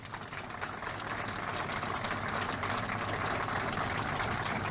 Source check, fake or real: real